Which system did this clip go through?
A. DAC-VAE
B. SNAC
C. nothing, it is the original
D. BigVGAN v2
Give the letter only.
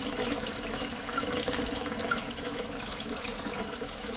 A